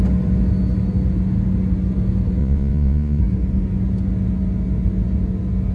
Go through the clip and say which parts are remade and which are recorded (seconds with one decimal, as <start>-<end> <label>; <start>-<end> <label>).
0.0-2.4 recorded; 2.4-3.2 remade; 3.2-5.7 recorded